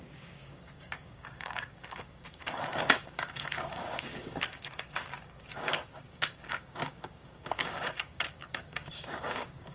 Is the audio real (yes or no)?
no